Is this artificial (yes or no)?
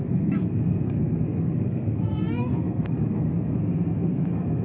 yes